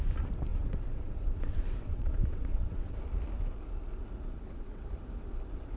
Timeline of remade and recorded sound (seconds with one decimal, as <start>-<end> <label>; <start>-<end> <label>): 0.0-0.5 recorded; 0.5-2.9 remade; 2.9-4.3 recorded; 4.3-4.9 remade; 4.9-5.8 recorded